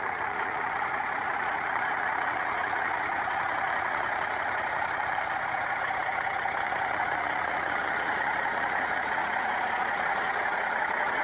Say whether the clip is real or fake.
fake